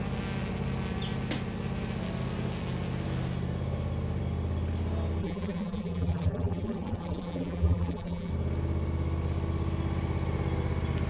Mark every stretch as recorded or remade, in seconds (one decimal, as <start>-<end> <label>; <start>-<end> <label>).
0.0-5.2 recorded; 5.2-8.3 remade; 8.3-11.1 recorded